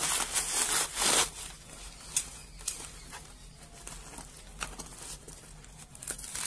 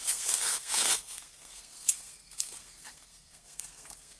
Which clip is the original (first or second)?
first